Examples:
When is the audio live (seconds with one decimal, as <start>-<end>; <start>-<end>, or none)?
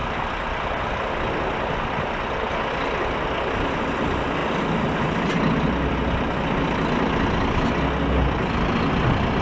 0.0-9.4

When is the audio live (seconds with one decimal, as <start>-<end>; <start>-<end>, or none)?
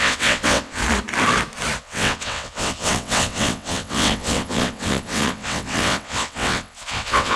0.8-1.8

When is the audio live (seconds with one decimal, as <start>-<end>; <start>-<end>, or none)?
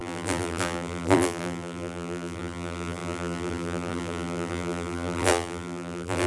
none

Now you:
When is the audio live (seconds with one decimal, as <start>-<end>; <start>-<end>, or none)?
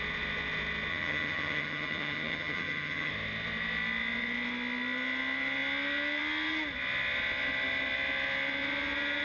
0.0-0.9; 3.1-9.2